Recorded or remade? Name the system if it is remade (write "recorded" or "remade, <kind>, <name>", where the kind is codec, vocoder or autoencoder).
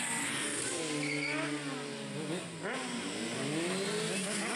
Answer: recorded